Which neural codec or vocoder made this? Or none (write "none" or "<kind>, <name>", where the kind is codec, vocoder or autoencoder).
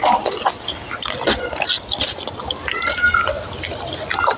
none